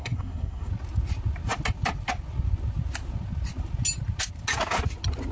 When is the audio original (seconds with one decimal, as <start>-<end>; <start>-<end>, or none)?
0.7-5.3